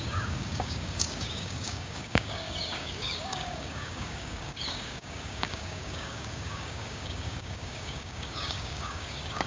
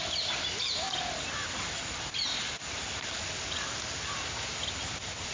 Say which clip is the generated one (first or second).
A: first